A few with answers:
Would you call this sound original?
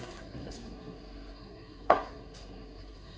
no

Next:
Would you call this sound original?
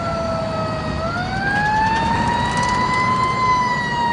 yes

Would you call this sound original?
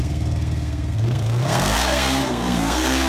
no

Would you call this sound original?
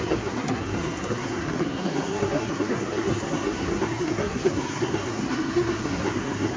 no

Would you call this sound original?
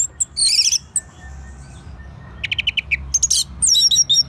yes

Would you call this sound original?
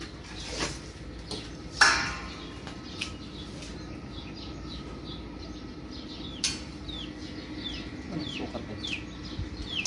yes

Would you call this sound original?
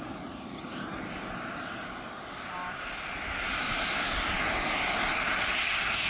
yes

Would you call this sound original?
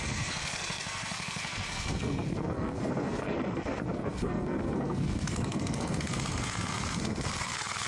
no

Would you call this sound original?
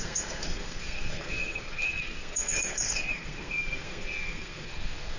no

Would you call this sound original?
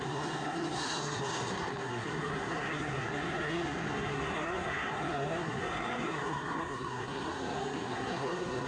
no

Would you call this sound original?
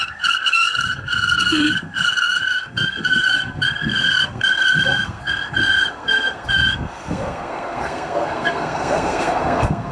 no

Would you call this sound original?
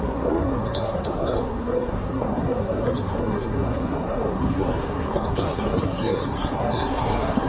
no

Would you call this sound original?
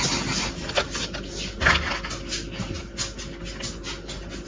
yes